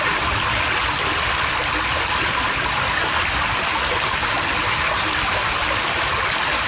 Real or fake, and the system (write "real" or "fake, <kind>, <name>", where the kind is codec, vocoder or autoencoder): real